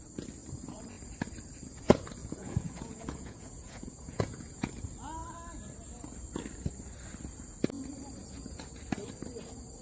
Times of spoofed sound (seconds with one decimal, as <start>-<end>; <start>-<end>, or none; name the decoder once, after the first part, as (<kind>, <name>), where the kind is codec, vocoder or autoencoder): 2.2-4.7 (vocoder, Vocos); 8.2-8.8